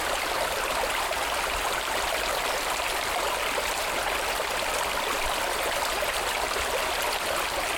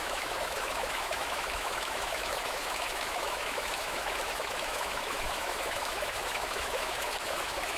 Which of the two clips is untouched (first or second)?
first